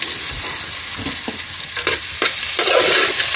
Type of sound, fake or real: real